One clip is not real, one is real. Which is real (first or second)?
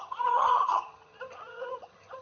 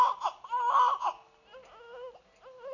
second